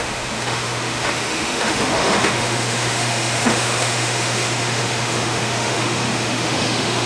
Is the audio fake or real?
fake